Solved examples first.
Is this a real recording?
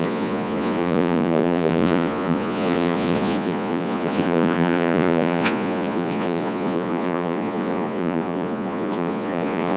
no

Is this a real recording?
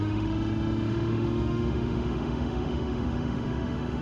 no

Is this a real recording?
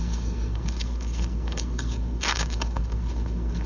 no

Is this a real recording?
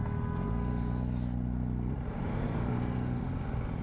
yes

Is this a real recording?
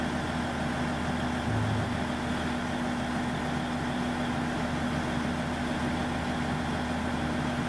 yes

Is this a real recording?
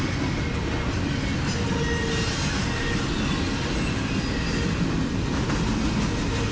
yes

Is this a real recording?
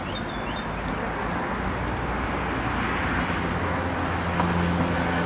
yes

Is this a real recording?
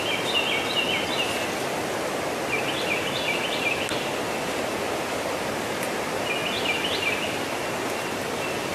yes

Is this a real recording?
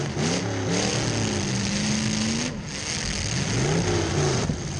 yes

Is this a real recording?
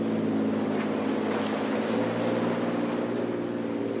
yes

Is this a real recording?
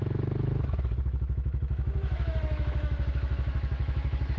no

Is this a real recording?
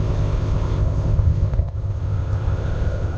no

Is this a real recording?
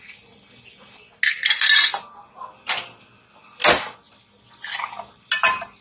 yes